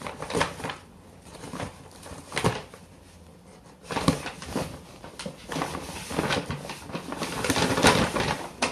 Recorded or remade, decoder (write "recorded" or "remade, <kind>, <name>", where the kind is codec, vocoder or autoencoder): recorded